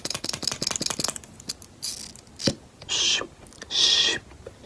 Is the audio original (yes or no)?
yes